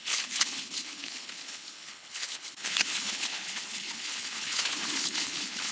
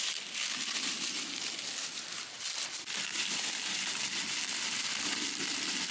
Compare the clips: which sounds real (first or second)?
second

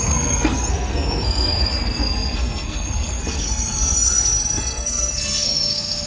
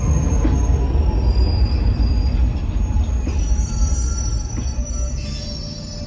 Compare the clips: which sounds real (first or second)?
second